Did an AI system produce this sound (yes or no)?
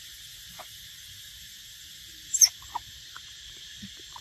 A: yes